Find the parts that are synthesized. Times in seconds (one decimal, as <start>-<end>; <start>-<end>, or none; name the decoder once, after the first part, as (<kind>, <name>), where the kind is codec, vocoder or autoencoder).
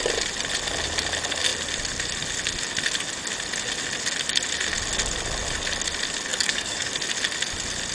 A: 6.3-6.9 (codec, DAC)